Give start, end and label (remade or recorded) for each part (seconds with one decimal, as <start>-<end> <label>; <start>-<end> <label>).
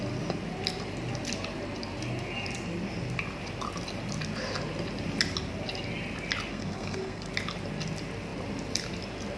0.0-6.5 recorded; 6.5-7.3 remade; 7.3-9.4 recorded